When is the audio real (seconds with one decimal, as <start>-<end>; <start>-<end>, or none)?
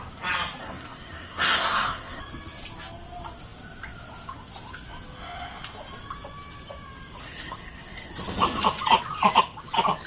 0.0-0.6; 2.2-7.2; 8.1-10.1